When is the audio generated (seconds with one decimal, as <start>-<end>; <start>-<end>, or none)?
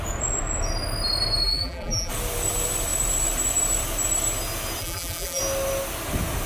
1.4-2.1; 4.8-5.4